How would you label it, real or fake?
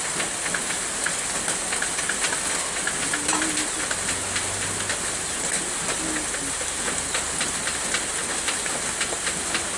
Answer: real